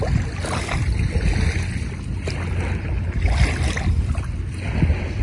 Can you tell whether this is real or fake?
real